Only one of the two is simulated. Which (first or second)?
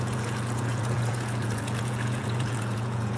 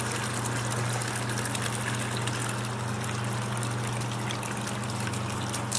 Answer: first